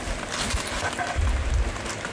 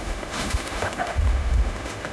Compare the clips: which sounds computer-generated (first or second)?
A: second